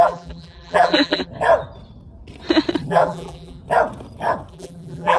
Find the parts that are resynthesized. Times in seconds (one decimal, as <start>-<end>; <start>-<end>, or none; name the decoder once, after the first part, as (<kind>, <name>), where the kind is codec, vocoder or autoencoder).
0.0-1.3 (vocoder, BigVGAN v2); 2.9-3.6; 4.5-5.2